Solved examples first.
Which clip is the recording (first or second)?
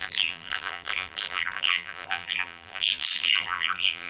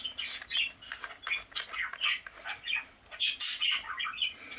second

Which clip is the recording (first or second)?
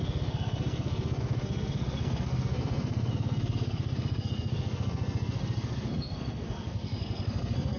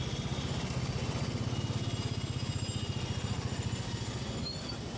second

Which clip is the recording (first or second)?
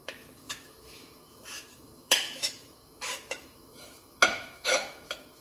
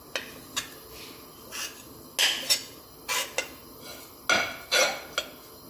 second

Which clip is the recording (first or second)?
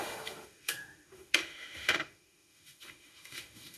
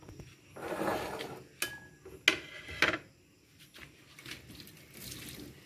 second